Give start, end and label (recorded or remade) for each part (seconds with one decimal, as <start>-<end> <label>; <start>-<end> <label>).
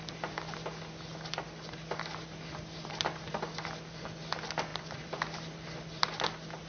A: 0.0-4.7 recorded; 4.7-6.2 remade; 6.2-6.7 recorded